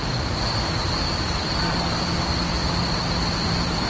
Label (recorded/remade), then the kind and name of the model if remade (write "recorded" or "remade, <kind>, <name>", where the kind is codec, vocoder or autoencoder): recorded